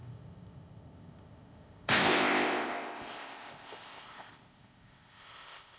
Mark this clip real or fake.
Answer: fake